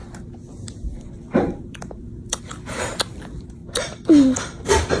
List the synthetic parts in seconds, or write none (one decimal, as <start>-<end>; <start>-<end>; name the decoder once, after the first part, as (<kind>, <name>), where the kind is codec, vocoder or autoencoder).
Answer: 0.5-3.6 (vocoder, BigVGAN v2); 4.4-5.0